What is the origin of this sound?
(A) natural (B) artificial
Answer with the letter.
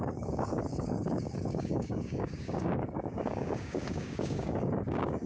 B